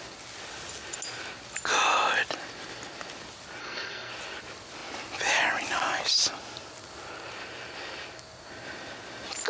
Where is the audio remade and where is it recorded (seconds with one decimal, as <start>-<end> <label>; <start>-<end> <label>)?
0.0-3.6 recorded; 3.6-4.1 remade; 4.1-9.5 recorded